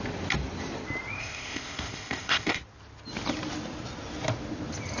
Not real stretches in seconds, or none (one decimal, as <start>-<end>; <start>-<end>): 1.2-2.6